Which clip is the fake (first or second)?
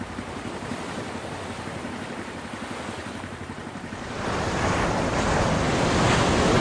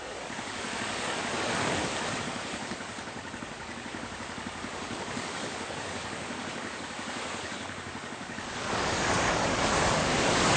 second